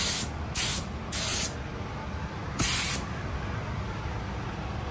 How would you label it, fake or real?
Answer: real